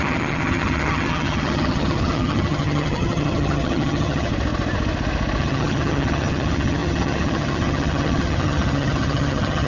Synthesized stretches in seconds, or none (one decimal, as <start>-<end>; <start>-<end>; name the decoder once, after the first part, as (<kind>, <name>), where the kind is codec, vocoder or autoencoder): 0.0-4.3 (vocoder, HiFi-GAN); 5.4-9.7